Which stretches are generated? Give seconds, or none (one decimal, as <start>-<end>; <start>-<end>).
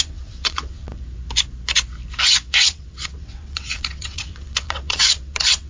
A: 0.0-0.9; 2.5-5.7